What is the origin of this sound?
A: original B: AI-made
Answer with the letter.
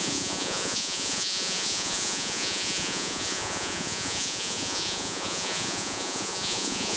B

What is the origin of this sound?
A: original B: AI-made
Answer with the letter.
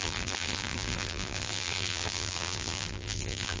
B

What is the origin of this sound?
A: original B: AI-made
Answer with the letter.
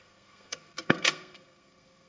B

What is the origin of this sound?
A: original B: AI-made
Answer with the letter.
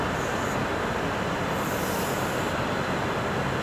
A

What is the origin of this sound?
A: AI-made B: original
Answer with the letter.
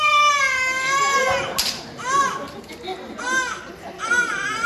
B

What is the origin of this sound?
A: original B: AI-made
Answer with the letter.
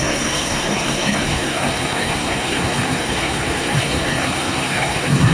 B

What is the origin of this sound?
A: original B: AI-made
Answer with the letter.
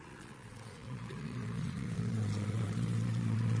B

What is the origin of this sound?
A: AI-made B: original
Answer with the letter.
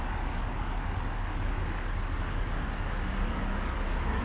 A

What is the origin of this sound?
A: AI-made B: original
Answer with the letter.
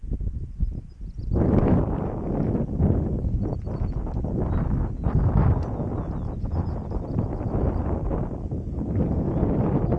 B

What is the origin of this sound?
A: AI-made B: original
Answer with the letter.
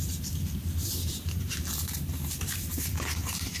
A